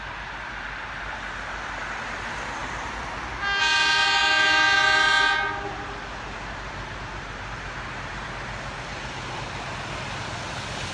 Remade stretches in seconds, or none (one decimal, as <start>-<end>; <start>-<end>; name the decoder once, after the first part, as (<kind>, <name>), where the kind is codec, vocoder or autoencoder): none